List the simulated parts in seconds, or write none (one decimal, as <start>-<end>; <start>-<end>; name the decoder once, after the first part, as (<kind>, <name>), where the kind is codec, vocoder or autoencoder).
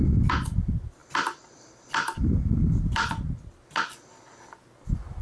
none